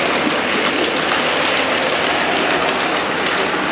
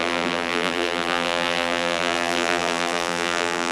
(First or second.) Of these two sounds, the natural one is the first